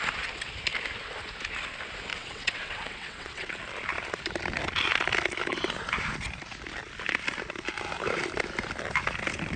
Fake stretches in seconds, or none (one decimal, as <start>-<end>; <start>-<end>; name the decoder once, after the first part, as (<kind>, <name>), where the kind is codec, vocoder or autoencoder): 2.1-3.5 (vocoder, WaveNeXt)